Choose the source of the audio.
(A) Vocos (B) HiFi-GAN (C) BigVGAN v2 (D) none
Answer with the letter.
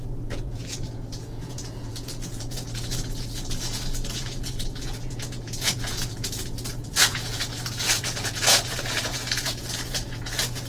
A